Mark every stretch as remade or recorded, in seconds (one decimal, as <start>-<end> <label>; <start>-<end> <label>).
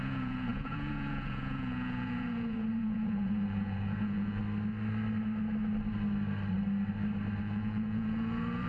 0.0-4.4 remade; 4.4-7.4 recorded; 7.4-8.7 remade